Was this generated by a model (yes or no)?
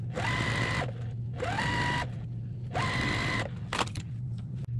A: no